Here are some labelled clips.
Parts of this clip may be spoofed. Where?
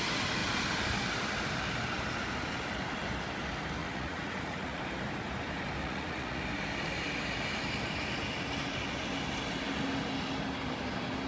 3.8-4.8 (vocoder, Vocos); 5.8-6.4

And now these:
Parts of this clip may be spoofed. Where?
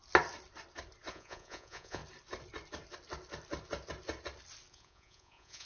1.1-2.0 (vocoder, Vocos); 4.7-5.7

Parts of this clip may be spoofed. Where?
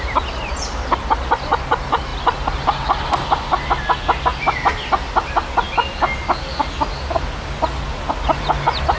none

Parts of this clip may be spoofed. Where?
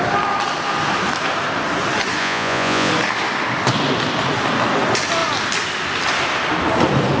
2.2-2.9 (vocoder, Vocos)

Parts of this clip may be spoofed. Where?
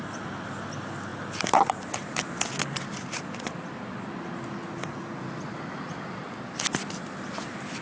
none